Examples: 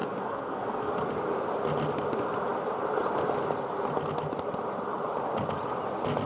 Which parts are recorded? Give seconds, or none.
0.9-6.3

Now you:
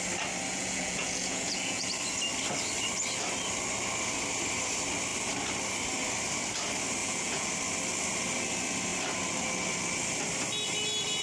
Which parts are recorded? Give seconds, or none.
0.0-0.5; 1.9-7.0; 7.5-11.2

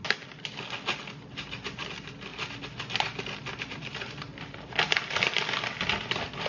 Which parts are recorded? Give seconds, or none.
0.0-6.5